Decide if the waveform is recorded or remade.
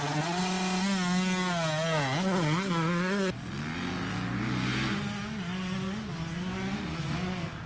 recorded